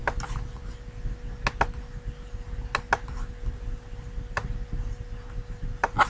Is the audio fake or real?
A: real